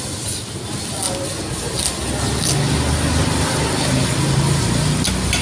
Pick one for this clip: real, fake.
real